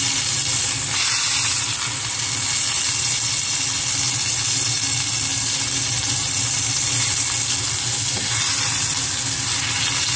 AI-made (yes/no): no